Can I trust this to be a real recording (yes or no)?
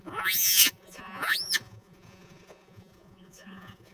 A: no